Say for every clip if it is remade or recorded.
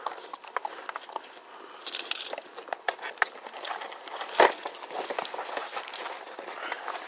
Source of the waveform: recorded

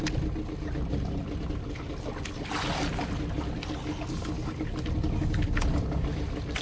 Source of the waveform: recorded